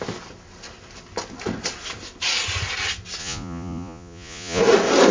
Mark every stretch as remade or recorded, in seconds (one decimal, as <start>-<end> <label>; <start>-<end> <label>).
0.0-3.2 recorded; 3.2-4.6 remade; 4.6-5.1 recorded